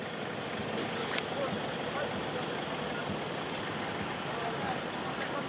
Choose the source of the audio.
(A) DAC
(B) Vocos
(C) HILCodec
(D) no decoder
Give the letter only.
D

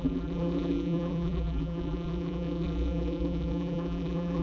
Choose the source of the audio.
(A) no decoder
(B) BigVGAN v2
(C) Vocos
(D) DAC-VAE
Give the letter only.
B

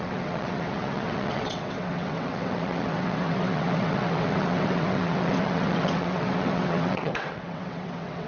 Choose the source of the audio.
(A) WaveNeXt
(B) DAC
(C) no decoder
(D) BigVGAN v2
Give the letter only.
A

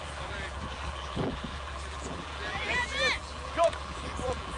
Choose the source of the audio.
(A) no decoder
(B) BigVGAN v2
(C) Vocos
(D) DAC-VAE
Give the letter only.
B